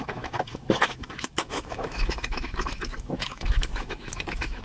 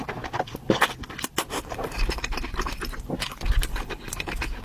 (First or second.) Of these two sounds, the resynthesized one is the first